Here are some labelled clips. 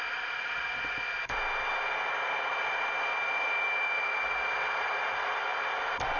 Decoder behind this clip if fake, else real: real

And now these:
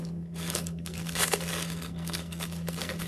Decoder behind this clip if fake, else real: fake, codec, SNAC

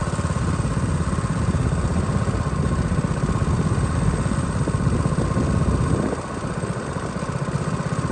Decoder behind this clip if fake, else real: real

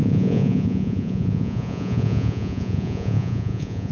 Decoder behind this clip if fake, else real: fake, vocoder, Vocos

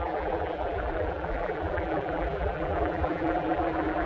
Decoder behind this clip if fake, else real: fake, vocoder, BigVGAN v2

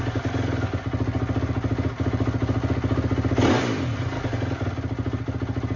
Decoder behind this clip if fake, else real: real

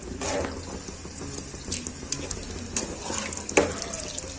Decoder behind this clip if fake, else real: real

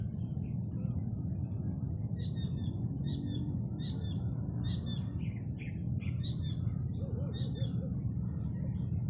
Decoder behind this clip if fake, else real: real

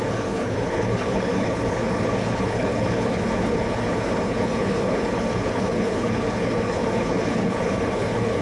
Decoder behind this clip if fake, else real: fake, codec, HILCodec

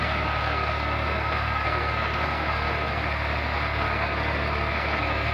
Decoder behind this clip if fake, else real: fake, codec, SNAC